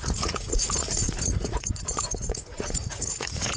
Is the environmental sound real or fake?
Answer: fake